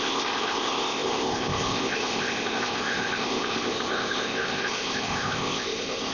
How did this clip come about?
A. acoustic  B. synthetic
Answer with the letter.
B